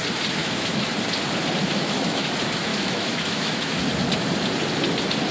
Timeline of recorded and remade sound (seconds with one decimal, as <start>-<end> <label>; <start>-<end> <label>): 0.0-0.4 recorded; 0.4-0.9 remade; 0.9-1.6 recorded; 1.6-2.3 remade; 2.3-2.7 recorded; 2.7-3.8 remade; 3.8-5.3 recorded